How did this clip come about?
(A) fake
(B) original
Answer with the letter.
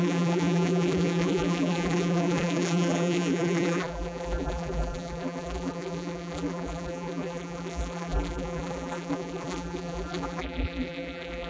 A